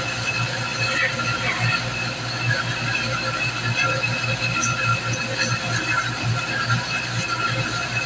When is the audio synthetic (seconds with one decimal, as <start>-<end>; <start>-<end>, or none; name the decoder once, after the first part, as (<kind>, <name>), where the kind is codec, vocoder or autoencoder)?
none